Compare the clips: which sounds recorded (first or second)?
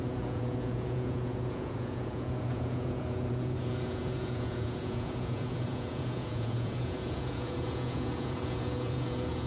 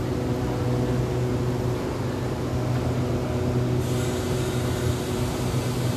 second